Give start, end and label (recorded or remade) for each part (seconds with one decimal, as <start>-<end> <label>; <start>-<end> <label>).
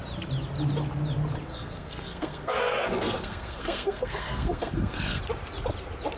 0.0-1.5 recorded; 1.5-5.2 remade; 5.2-6.2 recorded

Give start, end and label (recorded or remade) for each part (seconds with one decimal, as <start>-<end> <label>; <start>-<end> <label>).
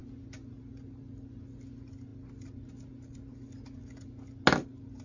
0.0-5.0 recorded